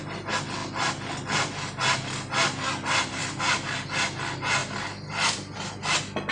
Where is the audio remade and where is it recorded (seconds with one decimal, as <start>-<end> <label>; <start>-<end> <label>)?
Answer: 0.0-6.3 recorded